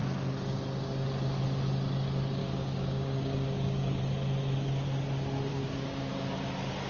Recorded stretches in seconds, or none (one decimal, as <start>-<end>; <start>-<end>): 0.0-2.4; 4.0-5.5; 6.1-6.9